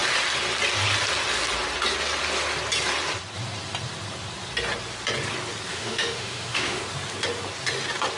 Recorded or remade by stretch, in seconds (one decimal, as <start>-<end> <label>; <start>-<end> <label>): 0.0-5.7 recorded; 5.7-6.8 remade; 6.8-8.2 recorded